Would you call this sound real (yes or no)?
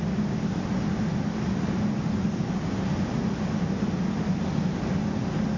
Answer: yes